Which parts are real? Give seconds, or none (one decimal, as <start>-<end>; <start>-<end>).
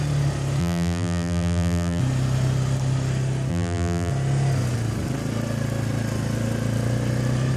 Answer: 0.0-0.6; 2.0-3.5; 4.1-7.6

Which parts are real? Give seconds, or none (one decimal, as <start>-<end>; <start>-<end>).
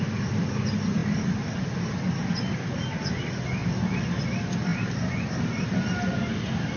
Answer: 0.0-6.8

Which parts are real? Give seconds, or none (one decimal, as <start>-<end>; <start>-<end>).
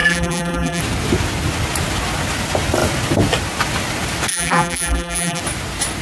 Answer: 0.8-4.3; 5.4-6.0